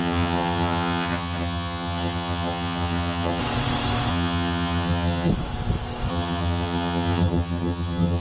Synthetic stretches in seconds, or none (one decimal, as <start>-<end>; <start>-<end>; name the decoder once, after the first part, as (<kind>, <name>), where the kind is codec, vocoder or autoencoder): 0.0-3.4 (vocoder, HiFi-GAN); 4.1-5.3; 6.1-8.2